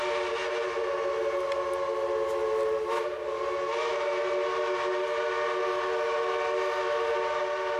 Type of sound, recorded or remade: recorded